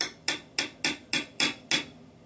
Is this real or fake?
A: real